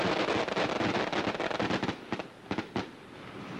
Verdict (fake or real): real